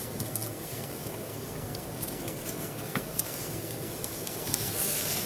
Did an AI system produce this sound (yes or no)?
yes